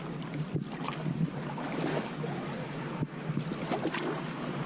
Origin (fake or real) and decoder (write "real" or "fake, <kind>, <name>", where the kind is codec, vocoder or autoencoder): real